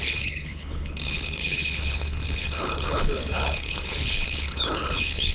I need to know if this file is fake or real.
fake